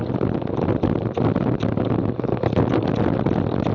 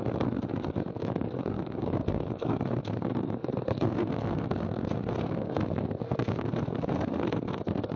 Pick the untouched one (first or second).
first